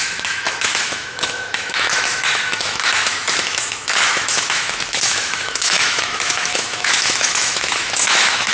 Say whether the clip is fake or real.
fake